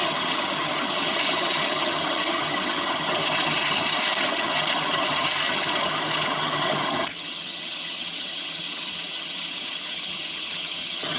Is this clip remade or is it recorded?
remade